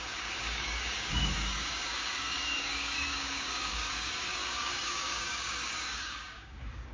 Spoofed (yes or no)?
yes